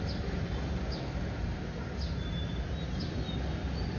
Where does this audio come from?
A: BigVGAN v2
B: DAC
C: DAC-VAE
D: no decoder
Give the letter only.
D